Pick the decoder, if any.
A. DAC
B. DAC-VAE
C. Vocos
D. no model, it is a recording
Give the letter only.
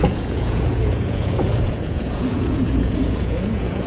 C